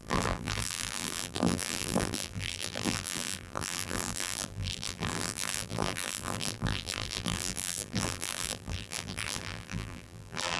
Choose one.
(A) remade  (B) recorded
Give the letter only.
A